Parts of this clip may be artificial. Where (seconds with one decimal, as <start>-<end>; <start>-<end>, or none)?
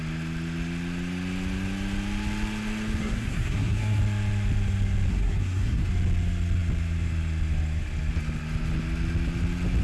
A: 3.0-4.0; 5.1-5.9